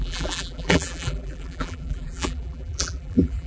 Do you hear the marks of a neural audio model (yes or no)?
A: yes